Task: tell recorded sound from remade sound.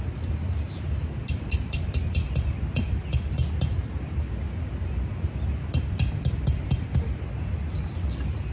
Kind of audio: recorded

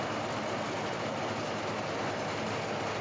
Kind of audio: recorded